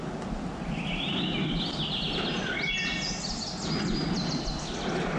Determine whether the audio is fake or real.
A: real